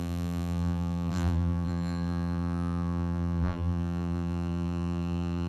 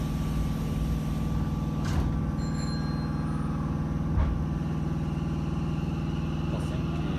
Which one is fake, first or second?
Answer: first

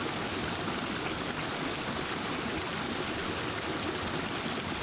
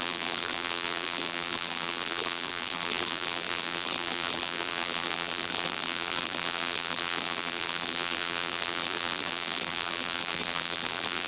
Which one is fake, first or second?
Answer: second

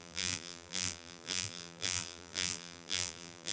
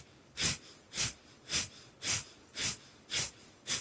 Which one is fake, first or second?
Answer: first